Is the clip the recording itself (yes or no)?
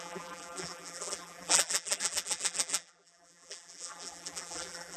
no